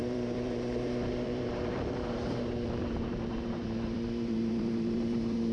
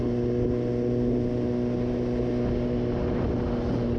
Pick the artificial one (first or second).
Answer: first